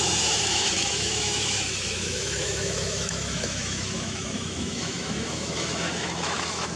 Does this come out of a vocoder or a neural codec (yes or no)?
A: yes